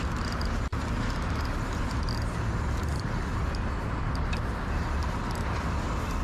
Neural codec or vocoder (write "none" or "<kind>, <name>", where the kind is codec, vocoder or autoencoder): none